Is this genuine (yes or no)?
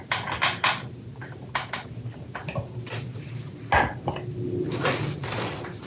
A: yes